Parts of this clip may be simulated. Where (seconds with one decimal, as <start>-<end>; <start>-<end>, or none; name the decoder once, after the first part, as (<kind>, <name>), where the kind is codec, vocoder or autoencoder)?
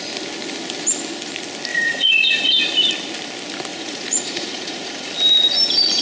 1.7-2.5 (vocoder, Vocos); 3.7-5.1